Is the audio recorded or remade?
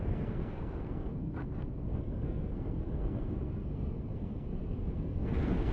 remade